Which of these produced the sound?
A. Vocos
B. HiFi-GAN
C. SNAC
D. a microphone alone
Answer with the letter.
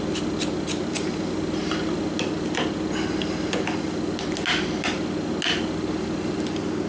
D